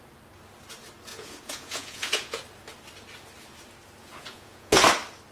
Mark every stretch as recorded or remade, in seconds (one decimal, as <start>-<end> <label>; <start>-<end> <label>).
0.0-1.1 recorded; 1.1-2.4 remade; 2.4-4.0 recorded; 4.0-4.8 remade; 4.8-5.3 recorded